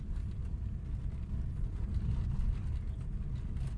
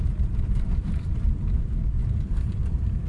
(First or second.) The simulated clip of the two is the second